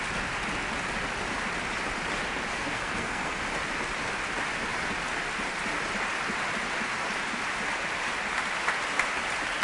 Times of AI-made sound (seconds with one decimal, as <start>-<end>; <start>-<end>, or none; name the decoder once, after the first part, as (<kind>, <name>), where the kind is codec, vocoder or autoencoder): 2.5-3.4 (codec, SNAC)